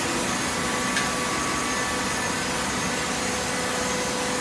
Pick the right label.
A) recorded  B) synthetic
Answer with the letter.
A